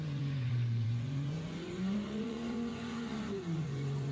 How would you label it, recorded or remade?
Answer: remade